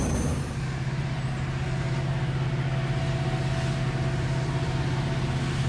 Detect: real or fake real